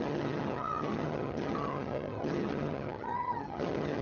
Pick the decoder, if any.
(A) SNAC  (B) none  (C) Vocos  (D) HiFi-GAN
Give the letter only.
D